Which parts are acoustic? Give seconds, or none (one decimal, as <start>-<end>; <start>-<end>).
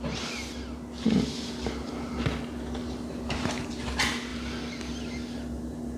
0.0-2.8; 3.7-6.0